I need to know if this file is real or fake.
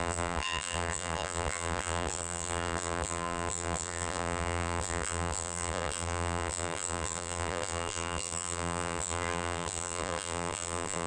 fake